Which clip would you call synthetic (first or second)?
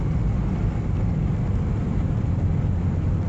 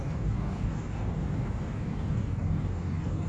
second